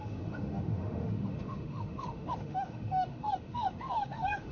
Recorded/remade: remade